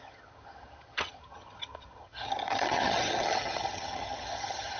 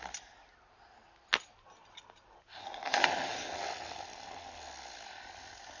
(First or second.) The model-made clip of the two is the first